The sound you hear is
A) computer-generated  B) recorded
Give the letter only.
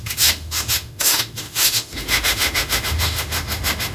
A